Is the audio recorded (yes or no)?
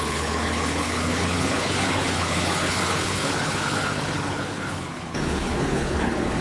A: no